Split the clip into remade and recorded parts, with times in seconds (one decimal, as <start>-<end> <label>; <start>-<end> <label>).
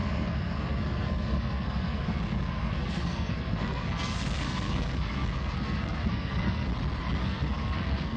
0.0-6.7 remade; 6.7-7.2 recorded; 7.2-8.2 remade